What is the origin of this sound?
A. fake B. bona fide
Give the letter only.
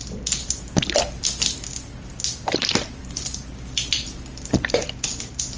A